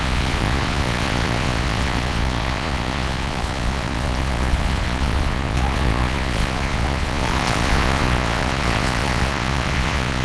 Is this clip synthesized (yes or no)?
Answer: yes